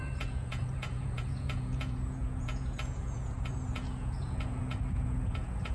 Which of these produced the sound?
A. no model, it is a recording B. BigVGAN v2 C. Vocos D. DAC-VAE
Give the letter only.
C